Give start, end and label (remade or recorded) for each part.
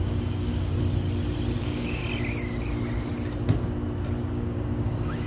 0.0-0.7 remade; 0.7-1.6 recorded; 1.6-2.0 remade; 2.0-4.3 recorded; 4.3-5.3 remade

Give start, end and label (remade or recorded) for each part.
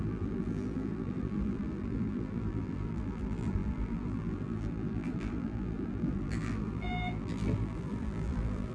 0.0-8.7 remade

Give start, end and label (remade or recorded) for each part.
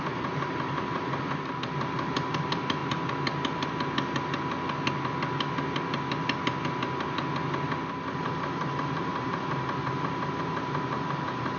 0.0-2.8 remade; 2.8-7.9 recorded; 7.9-11.6 remade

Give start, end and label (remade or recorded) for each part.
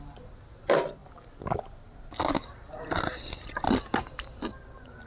0.0-5.1 recorded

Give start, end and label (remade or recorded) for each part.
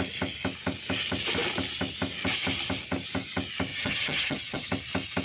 0.0-3.7 recorded; 3.7-4.7 remade; 4.7-5.2 recorded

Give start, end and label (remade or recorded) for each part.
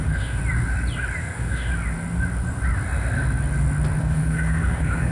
0.0-0.4 remade; 0.4-1.2 recorded; 1.2-1.7 remade; 1.7-4.0 recorded; 4.0-5.1 remade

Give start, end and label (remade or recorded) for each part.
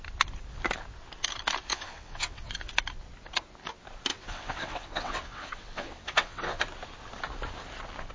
0.0-1.7 recorded; 1.7-2.7 remade; 2.7-4.1 recorded; 4.1-6.6 remade; 6.6-8.1 recorded